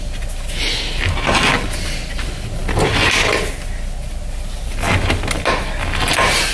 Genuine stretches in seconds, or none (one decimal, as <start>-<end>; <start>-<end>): 0.0-6.5